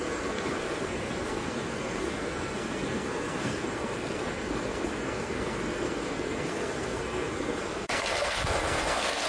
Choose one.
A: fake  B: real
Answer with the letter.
A